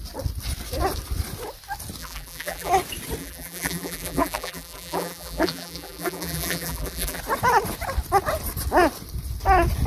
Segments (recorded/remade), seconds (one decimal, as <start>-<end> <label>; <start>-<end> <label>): 0.0-2.0 recorded; 2.0-2.7 remade; 2.7-3.2 recorded; 3.2-7.2 remade; 7.2-9.9 recorded